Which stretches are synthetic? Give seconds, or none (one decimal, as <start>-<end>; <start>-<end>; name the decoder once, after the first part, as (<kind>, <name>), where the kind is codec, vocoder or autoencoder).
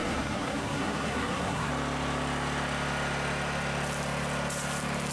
0.0-1.7 (codec, SNAC)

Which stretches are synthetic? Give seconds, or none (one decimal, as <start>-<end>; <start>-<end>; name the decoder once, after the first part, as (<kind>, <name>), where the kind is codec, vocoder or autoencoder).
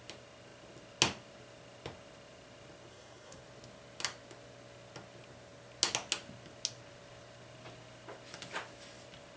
2.9-3.4 (codec, SNAC)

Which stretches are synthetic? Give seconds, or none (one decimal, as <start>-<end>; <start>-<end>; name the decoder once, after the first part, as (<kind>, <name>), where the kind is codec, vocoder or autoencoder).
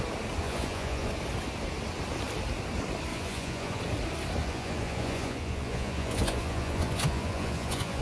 0.4-1.1 (vocoder, Vocos); 3.1-3.8; 4.4-8.0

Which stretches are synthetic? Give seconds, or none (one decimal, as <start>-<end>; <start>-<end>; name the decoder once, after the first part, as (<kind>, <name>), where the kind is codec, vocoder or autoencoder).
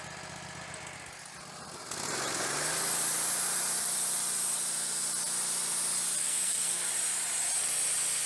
6.2-6.9 (codec, SNAC)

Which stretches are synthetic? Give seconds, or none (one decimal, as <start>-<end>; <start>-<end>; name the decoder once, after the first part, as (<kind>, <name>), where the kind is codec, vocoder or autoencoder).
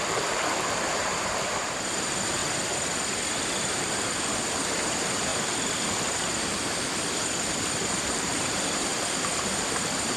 0.0-2.4 (vocoder, BigVGAN v2); 3.4-5.3; 8.1-8.9; 9.5-10.2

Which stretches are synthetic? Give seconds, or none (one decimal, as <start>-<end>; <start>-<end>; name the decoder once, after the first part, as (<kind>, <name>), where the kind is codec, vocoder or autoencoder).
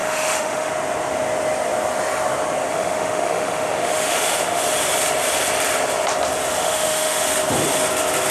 0.0-0.7 (autoencoder, DAC-VAE); 2.7-4.6; 6.6-7.2